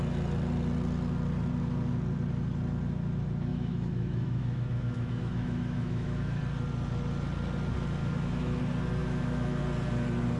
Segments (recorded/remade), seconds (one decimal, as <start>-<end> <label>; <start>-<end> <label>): 0.0-3.5 recorded; 3.5-6.4 remade; 6.4-8.0 recorded; 8.0-8.6 remade; 8.6-9.0 recorded; 9.0-9.6 remade; 9.6-10.4 recorded